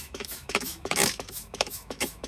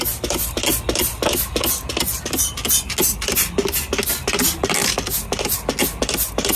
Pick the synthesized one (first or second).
first